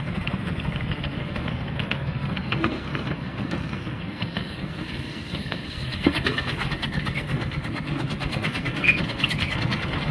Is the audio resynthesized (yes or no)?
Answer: yes